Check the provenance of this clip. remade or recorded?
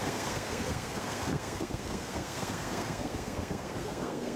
remade